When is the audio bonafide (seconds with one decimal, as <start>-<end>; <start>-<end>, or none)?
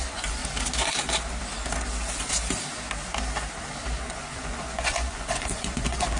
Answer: 0.4-4.0